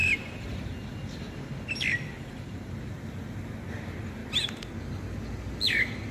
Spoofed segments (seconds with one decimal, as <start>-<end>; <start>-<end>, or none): 0.0-2.9